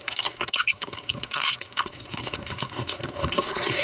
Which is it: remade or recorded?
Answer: remade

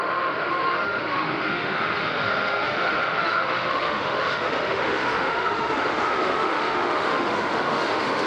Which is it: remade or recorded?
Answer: remade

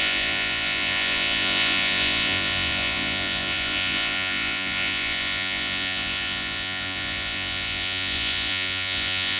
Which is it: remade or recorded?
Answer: remade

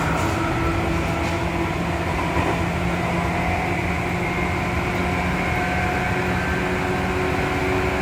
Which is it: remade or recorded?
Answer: recorded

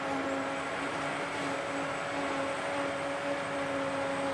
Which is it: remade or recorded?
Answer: recorded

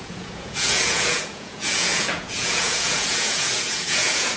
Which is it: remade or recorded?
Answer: remade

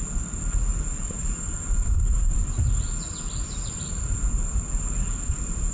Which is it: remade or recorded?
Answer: recorded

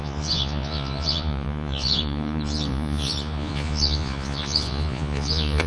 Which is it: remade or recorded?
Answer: remade